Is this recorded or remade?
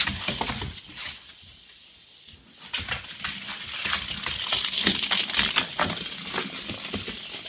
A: recorded